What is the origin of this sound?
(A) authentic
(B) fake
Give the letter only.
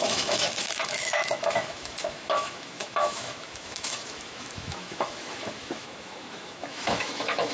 B